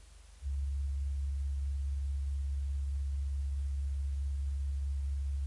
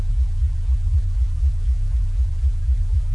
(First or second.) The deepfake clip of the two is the second